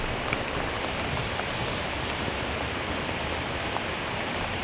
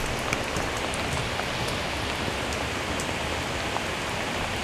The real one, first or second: second